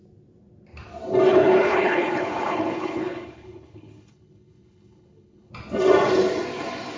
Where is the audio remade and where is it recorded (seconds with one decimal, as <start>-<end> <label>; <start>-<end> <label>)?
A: 0.0-1.3 recorded; 1.3-5.5 remade; 5.5-7.0 recorded